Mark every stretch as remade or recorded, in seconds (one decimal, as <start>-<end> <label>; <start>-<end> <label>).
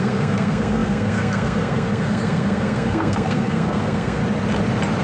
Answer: 0.0-4.2 remade; 4.2-5.0 recorded